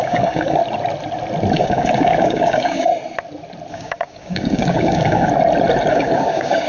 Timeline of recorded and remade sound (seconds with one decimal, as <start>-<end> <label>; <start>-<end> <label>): 0.0-0.6 remade; 0.6-1.5 recorded; 1.5-2.9 remade; 2.9-3.7 recorded; 3.7-5.3 remade; 5.3-5.9 recorded; 5.9-6.7 remade